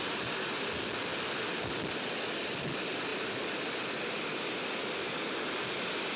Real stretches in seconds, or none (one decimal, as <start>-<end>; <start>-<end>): 0.0-6.2